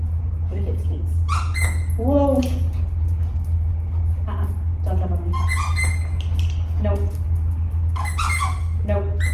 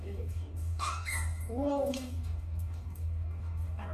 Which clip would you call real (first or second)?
first